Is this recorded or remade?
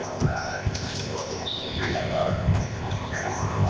remade